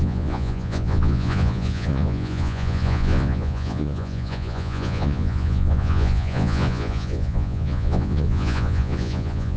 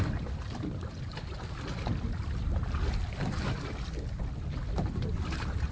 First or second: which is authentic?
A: second